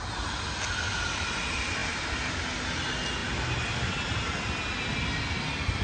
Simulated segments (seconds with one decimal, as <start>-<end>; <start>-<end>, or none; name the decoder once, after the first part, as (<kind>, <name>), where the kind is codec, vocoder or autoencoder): 1.8-2.3 (vocoder, BigVGAN v2)